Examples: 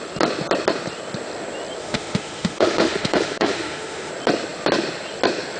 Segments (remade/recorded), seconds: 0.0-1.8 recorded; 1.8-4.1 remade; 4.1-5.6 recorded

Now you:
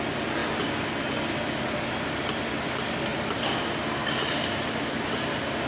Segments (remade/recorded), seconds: 0.0-5.7 recorded

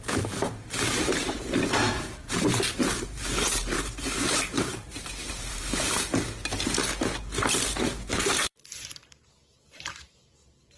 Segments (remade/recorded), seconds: 0.0-6.1 remade; 6.1-8.2 recorded; 8.2-10.8 remade

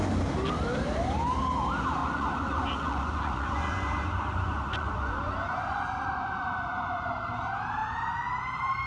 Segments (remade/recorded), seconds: 0.0-2.0 recorded; 2.0-7.1 remade; 7.1-8.9 recorded

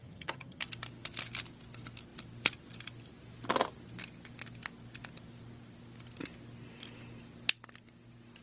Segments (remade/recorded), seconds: 0.0-0.6 remade; 0.6-8.4 recorded

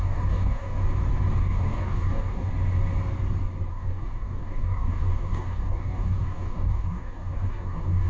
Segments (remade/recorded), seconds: 0.0-0.8 remade; 0.8-1.4 recorded; 1.4-2.5 remade; 2.5-3.7 recorded; 3.7-8.1 remade

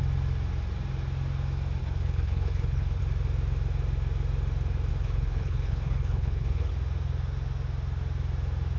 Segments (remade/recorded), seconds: 0.0-1.8 recorded; 1.8-3.0 remade; 3.0-4.9 recorded; 4.9-6.7 remade; 6.7-8.8 recorded

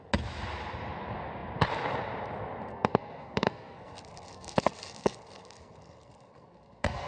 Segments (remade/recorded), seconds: 0.0-2.7 recorded; 2.7-7.1 remade